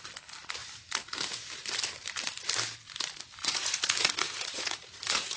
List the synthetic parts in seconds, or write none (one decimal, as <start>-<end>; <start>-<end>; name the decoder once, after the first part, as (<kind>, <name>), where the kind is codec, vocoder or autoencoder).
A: 3.4-5.4 (vocoder, Vocos)

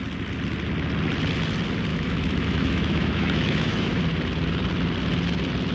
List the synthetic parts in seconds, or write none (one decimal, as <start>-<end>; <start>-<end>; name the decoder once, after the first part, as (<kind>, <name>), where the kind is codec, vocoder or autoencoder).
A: 1.9-4.0 (autoencoder, DAC-VAE)

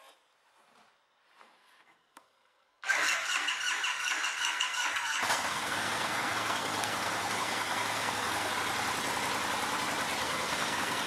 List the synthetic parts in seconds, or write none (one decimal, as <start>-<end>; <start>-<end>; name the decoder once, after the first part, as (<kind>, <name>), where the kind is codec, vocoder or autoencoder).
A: 1.4-3.5 (codec, SNAC); 3.9-8.5; 10.2-11.1

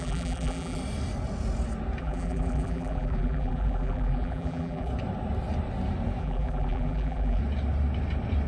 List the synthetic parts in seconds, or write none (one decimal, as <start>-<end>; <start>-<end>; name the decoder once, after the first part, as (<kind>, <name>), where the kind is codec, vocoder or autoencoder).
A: 0.0-0.8 (vocoder, BigVGAN v2); 2.0-4.9; 6.2-7.4

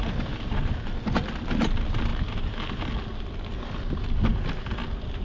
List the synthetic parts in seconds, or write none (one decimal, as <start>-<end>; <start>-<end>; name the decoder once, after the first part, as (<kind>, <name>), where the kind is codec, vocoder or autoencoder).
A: none